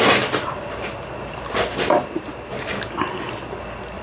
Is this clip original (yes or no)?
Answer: yes